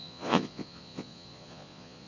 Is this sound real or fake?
fake